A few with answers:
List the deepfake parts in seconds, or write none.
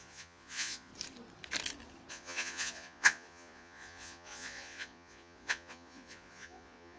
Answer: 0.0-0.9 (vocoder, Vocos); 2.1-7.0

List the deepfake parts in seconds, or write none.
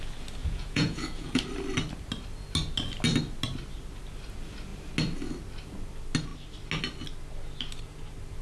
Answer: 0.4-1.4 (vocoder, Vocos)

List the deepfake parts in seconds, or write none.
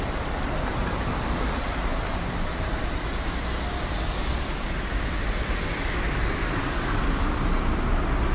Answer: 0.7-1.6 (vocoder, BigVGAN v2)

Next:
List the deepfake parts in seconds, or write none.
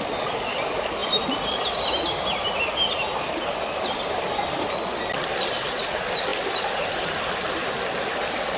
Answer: 1.0-1.9 (vocoder, BigVGAN v2); 6.3-7.2